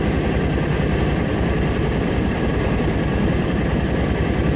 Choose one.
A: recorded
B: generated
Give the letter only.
B